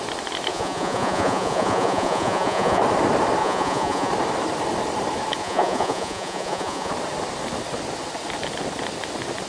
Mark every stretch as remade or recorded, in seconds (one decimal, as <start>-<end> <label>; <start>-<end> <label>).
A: 0.0-0.5 recorded; 0.5-2.8 remade; 2.8-3.4 recorded; 3.4-4.1 remade; 4.1-5.4 recorded; 5.4-6.9 remade; 6.9-9.5 recorded